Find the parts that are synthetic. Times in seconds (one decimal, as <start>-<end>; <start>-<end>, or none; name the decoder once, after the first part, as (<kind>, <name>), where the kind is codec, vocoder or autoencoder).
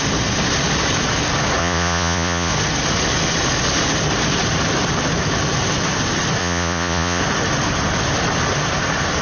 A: 1.6-2.5 (vocoder, Vocos); 6.4-7.2